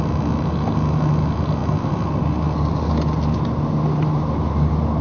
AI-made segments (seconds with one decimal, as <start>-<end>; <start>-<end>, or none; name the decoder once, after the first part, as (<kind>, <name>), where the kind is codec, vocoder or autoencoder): none